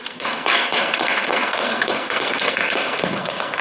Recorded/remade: remade